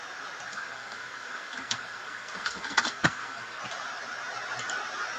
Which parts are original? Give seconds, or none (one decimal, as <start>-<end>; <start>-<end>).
0.0-0.5; 3.6-5.2